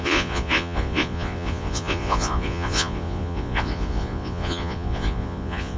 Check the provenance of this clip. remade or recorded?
remade